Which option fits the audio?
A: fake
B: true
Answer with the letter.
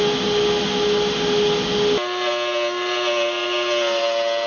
B